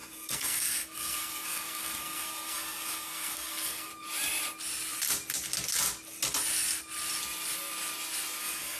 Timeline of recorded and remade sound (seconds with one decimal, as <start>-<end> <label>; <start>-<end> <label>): 0.0-3.9 remade; 3.9-8.4 recorded; 8.4-8.8 remade